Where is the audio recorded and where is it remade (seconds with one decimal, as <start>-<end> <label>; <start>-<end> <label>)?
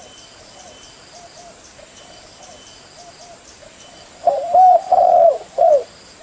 0.0-4.7 recorded; 4.7-5.7 remade; 5.7-6.2 recorded